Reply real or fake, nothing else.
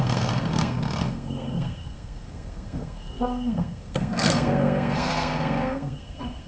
fake